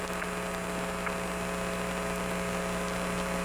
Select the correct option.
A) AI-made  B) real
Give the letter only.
B